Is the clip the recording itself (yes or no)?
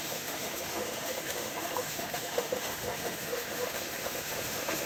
no